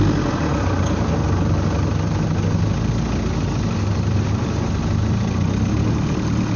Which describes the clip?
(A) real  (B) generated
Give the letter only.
A